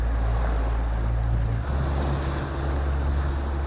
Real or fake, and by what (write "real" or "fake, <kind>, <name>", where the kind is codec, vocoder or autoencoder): real